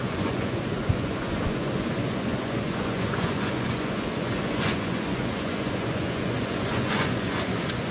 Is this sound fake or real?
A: fake